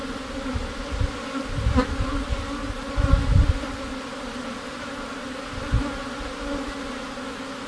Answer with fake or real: real